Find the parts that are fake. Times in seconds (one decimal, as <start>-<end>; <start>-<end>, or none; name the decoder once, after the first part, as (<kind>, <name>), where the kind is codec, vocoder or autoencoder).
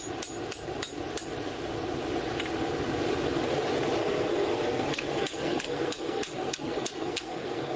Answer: 4.0-7.8 (codec, SNAC)